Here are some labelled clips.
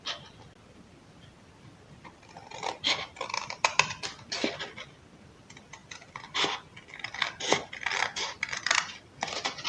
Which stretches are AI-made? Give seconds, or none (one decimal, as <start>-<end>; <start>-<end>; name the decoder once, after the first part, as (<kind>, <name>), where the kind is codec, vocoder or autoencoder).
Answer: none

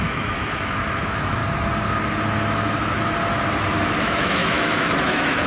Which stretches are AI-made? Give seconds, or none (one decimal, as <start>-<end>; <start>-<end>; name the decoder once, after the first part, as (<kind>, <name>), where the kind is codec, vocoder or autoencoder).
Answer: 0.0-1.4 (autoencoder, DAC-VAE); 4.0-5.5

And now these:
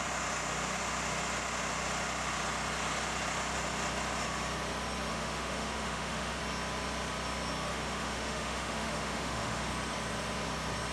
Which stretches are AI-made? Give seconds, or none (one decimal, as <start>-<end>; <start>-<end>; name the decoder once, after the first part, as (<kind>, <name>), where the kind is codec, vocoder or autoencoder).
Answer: 5.1-6.4 (autoencoder, DAC-VAE); 7.7-9.7

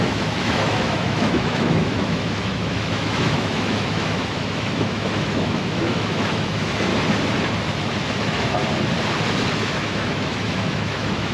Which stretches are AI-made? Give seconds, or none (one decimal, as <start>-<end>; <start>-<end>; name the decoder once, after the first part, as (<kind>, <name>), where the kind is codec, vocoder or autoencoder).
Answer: 0.0-6.9 (autoencoder, DAC-VAE); 8.2-8.6; 9.5-11.3